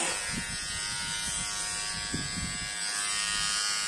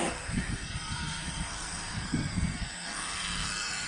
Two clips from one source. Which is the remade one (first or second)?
second